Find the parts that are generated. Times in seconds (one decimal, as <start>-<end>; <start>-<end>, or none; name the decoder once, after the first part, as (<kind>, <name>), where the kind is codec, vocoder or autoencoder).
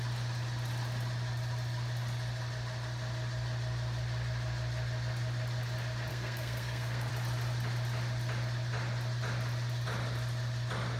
6.1-7.1 (codec, SNAC)